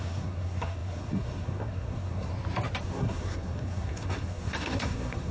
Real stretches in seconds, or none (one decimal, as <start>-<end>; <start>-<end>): 2.3-2.8